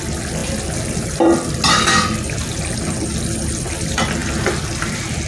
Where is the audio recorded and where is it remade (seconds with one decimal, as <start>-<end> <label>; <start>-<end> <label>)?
0.0-5.3 recorded